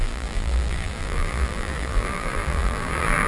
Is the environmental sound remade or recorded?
remade